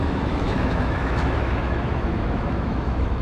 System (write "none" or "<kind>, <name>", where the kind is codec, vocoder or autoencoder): autoencoder, DAC-VAE